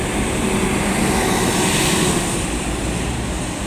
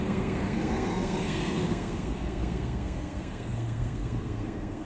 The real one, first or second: first